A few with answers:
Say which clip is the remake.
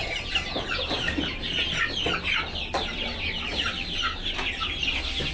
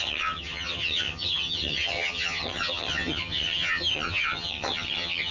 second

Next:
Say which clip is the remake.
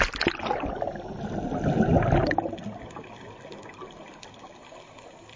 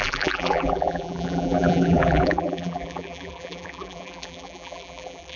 second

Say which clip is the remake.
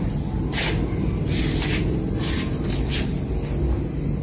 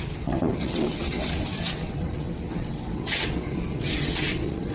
second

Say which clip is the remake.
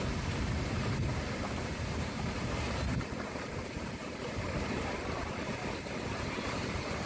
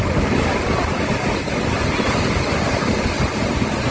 first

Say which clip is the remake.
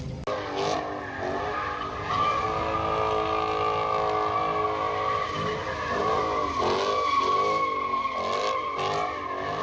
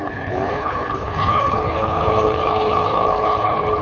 second